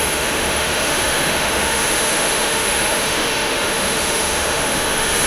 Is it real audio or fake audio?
fake